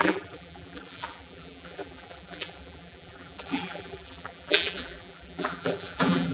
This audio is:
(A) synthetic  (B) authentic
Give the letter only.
A